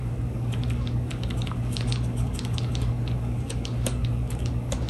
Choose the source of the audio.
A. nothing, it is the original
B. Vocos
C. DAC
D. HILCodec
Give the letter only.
C